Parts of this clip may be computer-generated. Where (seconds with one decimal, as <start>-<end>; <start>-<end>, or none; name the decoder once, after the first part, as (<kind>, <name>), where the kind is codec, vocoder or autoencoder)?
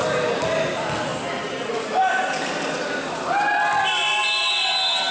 none